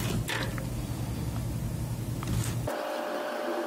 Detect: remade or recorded recorded